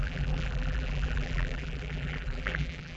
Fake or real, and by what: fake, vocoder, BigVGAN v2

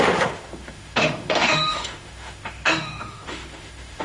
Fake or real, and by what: fake, autoencoder, DAC-VAE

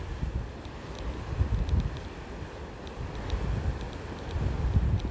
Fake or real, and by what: real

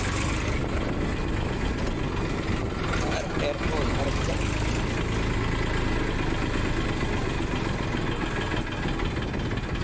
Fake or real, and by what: real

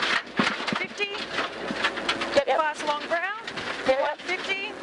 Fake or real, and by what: real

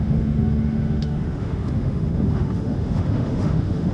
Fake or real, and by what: fake, autoencoder, DAC-VAE